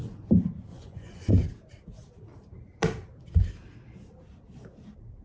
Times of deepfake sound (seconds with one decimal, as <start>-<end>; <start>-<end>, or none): 0.7-1.3